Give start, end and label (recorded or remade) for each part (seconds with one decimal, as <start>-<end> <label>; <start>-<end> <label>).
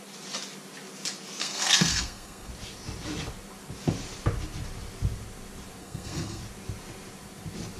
0.0-1.4 recorded; 1.4-2.5 remade; 2.5-5.8 recorded; 5.8-6.4 remade; 6.4-7.8 recorded